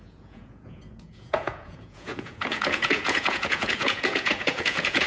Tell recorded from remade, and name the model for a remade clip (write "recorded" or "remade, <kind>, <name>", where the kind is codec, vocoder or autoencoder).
remade, vocoder, Vocos